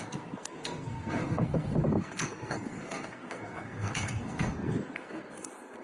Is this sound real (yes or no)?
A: no